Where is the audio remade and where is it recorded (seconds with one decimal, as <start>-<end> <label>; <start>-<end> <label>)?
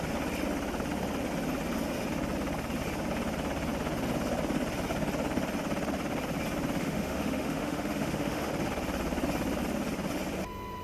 0.0-6.8 recorded; 6.8-8.5 remade; 8.5-10.8 recorded